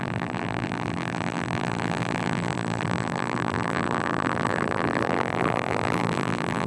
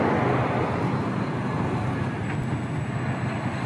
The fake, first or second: first